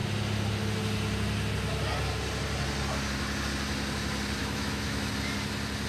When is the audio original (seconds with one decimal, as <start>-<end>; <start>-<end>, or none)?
0.0-4.4; 5.1-5.9